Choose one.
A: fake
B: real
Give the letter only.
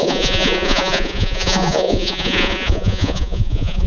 A